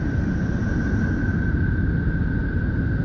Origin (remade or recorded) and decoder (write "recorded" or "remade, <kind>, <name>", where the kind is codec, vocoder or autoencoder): recorded